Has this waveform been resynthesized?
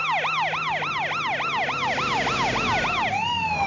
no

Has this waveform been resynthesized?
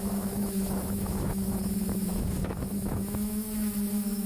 yes